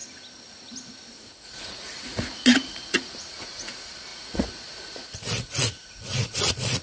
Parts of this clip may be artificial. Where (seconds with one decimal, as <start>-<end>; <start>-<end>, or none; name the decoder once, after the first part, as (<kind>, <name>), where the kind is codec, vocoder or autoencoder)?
1.1-6.8 (vocoder, Vocos)